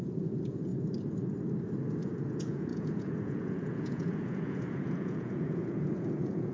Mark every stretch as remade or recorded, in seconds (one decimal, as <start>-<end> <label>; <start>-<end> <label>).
0.0-0.7 remade; 0.7-1.8 recorded; 1.8-6.5 remade